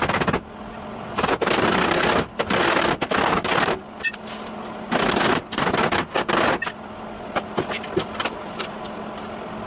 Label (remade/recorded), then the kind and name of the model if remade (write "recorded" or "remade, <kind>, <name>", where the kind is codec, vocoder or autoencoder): recorded